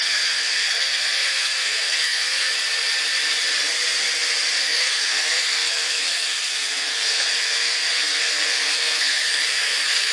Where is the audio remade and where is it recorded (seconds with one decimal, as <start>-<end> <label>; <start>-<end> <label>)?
0.0-2.5 remade; 2.5-4.6 recorded; 4.6-10.1 remade